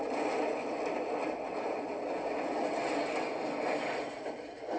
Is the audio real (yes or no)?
yes